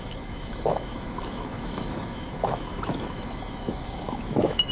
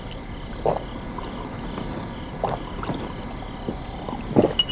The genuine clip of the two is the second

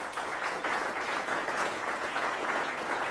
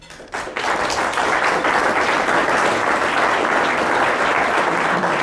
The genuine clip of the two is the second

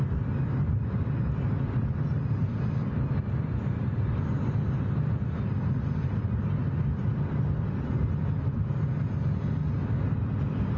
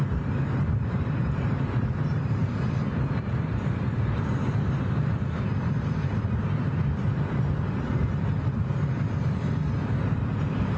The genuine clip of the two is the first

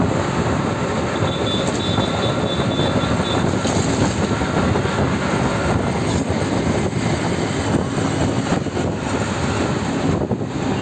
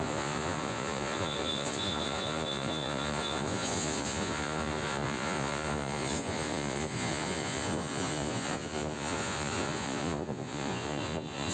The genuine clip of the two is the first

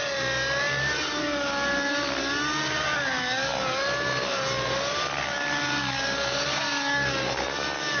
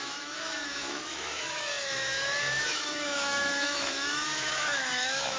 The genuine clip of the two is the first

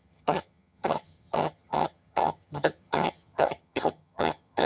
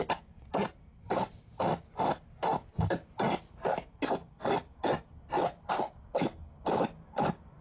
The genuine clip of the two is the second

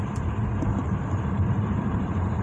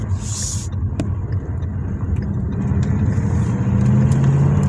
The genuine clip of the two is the second